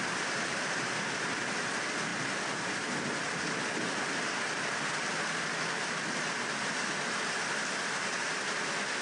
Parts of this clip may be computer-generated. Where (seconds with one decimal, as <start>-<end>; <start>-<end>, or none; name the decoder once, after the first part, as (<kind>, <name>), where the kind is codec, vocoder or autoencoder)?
none